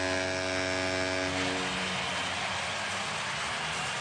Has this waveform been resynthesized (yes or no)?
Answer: no